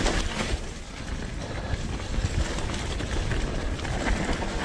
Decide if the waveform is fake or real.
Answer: real